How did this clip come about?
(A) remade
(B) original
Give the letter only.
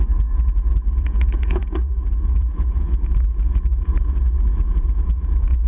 A